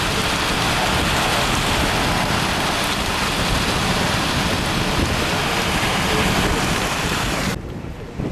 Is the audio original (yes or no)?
yes